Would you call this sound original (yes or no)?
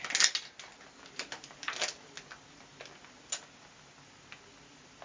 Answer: yes